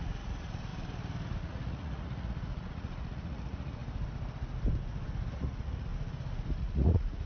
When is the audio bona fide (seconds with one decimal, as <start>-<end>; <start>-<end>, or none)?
0.7-1.4; 3.8-5.3; 5.9-6.6

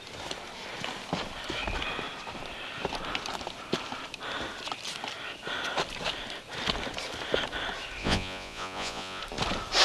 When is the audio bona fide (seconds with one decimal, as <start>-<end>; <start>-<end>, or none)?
0.0-8.0; 9.2-9.8

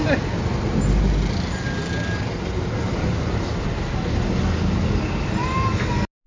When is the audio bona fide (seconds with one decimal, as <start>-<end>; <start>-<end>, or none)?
0.0-6.3

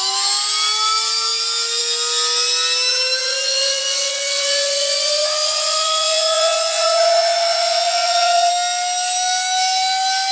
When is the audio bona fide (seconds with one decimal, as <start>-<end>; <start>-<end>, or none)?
0.0-3.2; 8.5-10.3

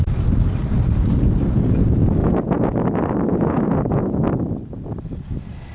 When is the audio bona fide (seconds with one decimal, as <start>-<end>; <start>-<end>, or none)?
0.0-2.2; 2.8-3.3; 4.1-5.7